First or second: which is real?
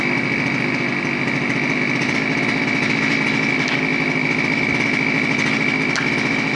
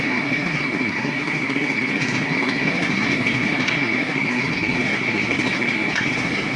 first